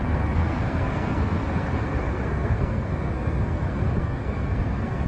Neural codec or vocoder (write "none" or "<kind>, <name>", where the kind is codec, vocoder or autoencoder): codec, SNAC